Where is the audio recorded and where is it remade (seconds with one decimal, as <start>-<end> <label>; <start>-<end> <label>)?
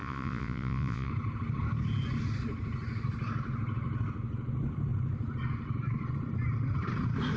0.0-1.1 remade; 1.1-7.4 recorded